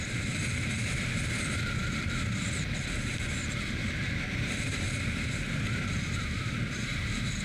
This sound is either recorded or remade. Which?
remade